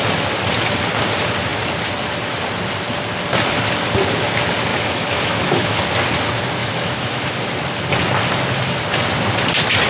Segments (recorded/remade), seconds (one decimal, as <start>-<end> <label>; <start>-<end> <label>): 0.0-4.7 recorded; 4.7-5.8 remade; 5.8-6.6 recorded; 6.6-7.3 remade; 7.3-9.9 recorded

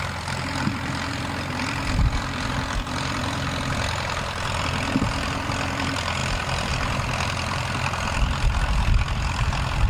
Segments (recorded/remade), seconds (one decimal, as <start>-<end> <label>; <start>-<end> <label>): 0.0-9.9 remade

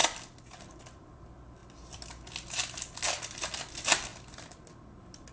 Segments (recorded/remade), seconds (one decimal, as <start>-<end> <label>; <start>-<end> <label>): 0.0-5.3 recorded

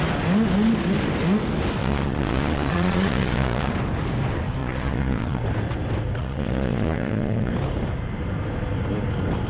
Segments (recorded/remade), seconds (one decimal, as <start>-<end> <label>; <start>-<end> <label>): 0.0-1.8 recorded; 1.8-3.7 remade; 3.7-4.6 recorded; 4.6-5.4 remade; 5.4-6.2 recorded; 6.2-7.5 remade; 7.5-9.5 recorded

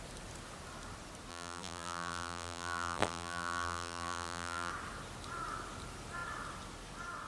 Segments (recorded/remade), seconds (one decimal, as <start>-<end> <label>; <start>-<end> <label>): 0.0-1.3 recorded; 1.3-4.7 remade; 4.7-7.3 recorded

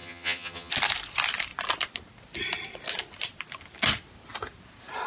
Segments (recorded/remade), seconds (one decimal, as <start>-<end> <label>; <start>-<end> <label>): 0.0-0.7 remade; 0.7-5.1 recorded

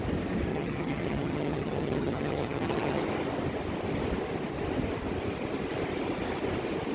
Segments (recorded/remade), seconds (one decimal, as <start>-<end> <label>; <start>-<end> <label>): 0.0-0.5 recorded; 0.5-3.0 remade; 3.0-6.9 recorded

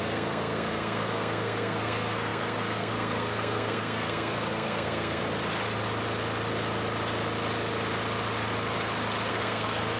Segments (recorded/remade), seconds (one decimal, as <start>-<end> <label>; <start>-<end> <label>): 0.0-5.2 remade; 5.2-9.3 recorded; 9.3-10.0 remade